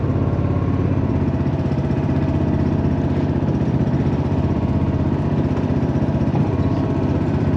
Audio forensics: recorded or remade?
remade